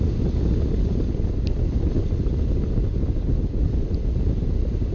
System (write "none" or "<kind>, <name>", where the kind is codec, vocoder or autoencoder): none